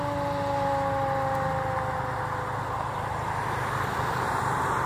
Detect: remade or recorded remade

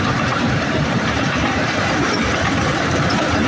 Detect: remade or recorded remade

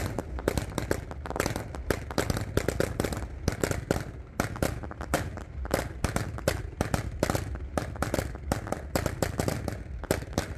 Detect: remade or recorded recorded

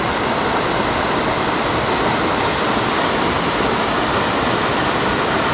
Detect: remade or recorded recorded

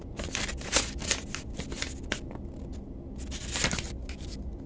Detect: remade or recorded recorded